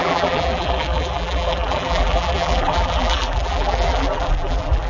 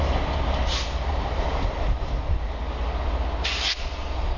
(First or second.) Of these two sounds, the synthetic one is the first